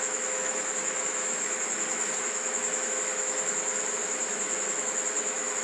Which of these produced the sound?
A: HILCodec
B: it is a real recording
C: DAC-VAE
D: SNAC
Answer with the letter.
C